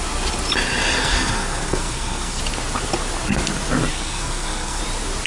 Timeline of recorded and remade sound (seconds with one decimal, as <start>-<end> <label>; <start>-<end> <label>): 0.0-1.0 recorded; 1.0-2.4 remade; 2.4-3.9 recorded; 3.9-4.8 remade; 4.8-5.3 recorded